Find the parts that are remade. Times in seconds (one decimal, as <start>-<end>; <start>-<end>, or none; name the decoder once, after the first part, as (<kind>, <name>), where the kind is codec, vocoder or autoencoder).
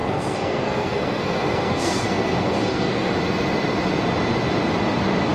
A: 0.0-3.1 (codec, SNAC)